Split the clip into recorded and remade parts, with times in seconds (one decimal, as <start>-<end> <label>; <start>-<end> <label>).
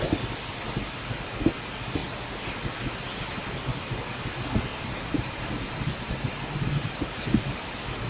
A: 0.0-4.7 recorded; 4.7-7.0 remade; 7.0-8.1 recorded